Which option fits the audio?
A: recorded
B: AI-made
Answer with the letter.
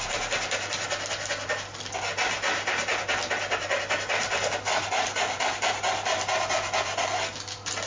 A